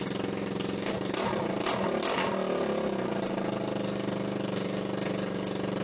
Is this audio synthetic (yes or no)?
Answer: no